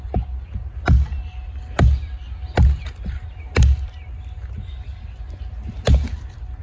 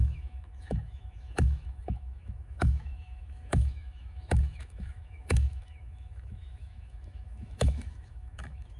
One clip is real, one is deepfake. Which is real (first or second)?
first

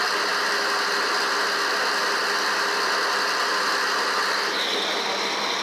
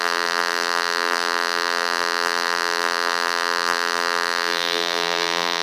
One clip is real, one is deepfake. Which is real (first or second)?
first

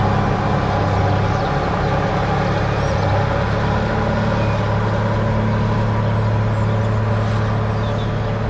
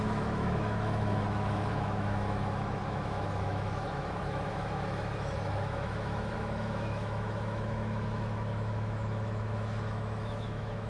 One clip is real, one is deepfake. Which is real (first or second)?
first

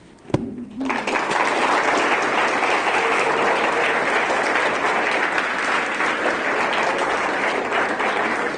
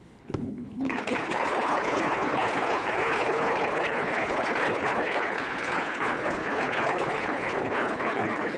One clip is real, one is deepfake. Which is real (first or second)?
first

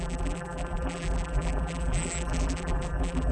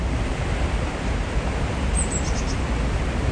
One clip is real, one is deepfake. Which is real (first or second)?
second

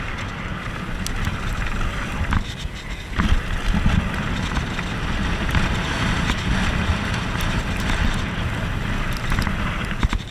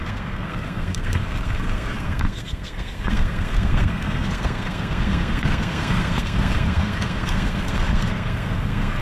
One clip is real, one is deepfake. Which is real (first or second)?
first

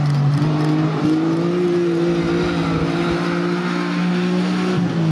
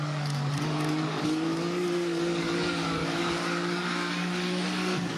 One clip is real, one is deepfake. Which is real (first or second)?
first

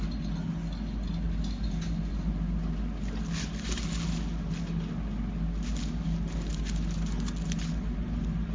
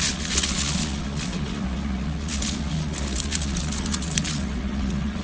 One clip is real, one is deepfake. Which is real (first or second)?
first